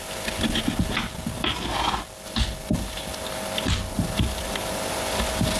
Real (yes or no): yes